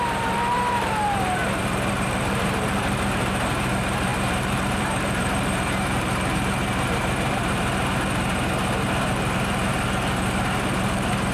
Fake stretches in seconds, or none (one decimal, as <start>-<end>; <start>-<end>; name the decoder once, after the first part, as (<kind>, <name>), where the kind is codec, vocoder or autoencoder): 0.0-11.3 (vocoder, BigVGAN v2)